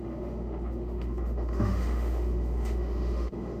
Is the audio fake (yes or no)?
yes